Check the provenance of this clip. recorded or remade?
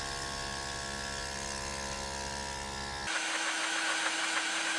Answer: recorded